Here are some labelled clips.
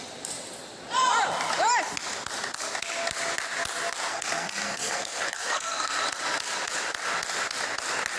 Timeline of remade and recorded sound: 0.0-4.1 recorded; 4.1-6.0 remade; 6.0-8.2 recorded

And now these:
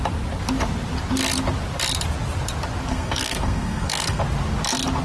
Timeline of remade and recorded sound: 0.0-2.9 recorded; 2.9-4.2 remade; 4.2-5.0 recorded

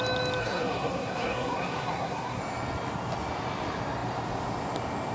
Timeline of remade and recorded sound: 0.0-0.4 recorded; 0.4-2.4 remade; 2.4-5.1 recorded

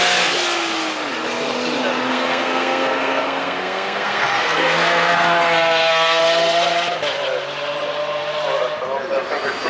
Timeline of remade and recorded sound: 0.0-2.1 recorded; 2.1-6.2 remade; 6.2-9.7 recorded

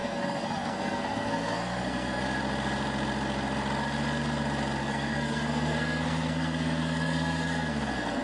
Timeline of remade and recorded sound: 0.0-2.2 remade; 2.2-4.8 recorded; 4.8-8.2 remade

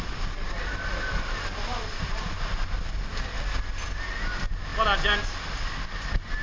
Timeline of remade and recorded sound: 0.0-6.4 recorded